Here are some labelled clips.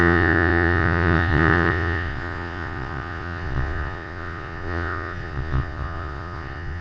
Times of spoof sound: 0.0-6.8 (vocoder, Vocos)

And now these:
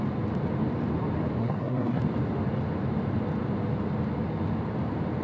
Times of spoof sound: 1.4-2.0 (codec, SNAC)